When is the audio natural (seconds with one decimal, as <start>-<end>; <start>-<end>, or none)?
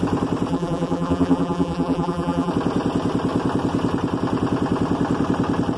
0.0-0.5; 2.5-5.8